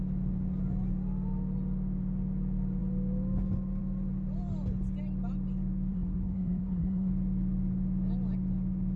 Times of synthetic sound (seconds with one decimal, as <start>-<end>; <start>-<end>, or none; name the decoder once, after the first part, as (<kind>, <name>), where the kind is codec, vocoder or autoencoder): 5.9-7.1 (codec, SNAC)